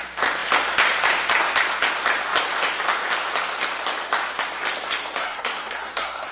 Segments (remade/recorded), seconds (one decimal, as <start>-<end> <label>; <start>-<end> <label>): 0.0-5.2 recorded; 5.2-6.3 remade